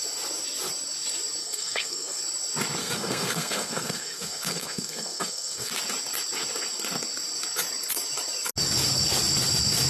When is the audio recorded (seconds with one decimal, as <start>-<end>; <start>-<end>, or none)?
0.0-1.4; 2.2-2.8; 5.7-9.9